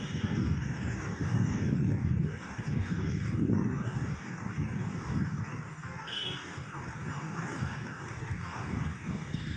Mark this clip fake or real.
fake